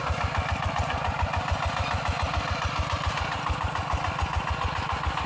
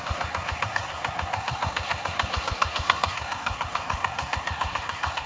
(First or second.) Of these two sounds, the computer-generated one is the second